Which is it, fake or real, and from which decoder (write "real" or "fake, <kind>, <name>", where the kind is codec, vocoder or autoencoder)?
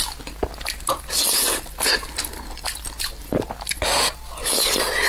real